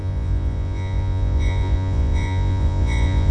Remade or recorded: remade